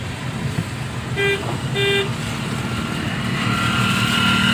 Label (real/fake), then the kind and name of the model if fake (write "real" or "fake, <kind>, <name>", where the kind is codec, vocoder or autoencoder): real